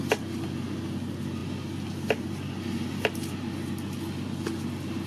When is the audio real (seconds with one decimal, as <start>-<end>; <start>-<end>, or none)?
0.0-5.1